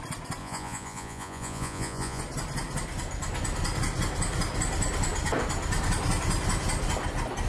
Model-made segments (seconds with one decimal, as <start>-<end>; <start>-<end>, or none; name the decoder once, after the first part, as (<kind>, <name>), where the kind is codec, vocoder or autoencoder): 0.4-2.2 (vocoder, Vocos)